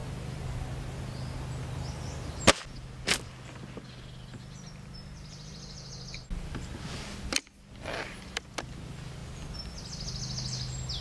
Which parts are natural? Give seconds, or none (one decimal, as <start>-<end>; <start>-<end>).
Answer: 0.0-11.0